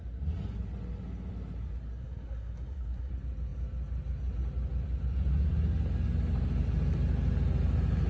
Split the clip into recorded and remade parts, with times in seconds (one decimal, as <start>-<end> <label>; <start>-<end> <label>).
0.0-2.0 recorded; 2.0-3.1 remade; 3.1-8.1 recorded